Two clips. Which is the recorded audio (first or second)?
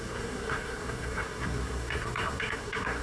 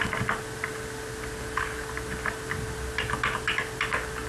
second